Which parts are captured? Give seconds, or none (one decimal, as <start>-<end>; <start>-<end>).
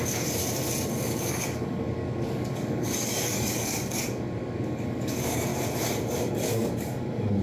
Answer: 0.4-0.9; 5.5-6.3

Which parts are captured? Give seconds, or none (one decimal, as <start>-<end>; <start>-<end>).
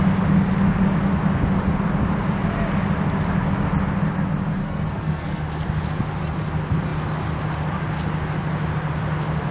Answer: 0.0-4.6; 5.4-9.5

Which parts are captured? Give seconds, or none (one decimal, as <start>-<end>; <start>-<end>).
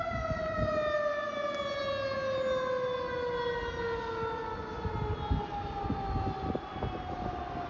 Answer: 0.0-7.7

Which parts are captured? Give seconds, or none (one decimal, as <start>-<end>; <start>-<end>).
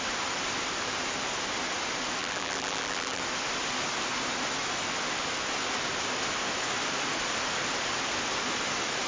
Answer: 0.0-2.2; 3.2-9.1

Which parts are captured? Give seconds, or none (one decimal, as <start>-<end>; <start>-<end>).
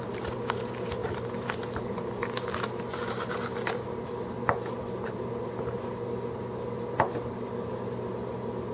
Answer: 0.0-8.7